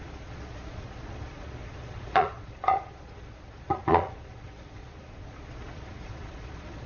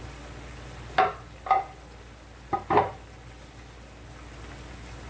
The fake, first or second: first